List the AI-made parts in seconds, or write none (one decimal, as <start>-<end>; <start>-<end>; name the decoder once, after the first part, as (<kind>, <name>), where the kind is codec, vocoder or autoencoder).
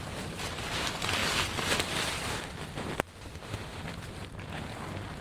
3.3-3.8 (autoencoder, DAC-VAE)